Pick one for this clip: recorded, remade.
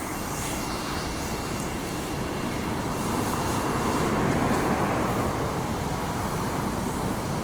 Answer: remade